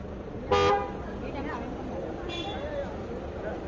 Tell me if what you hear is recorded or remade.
recorded